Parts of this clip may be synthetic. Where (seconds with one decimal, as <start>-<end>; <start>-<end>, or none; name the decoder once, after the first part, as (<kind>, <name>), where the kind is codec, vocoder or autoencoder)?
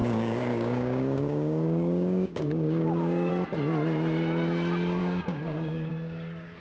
0.0-3.3 (codec, DAC); 5.0-5.9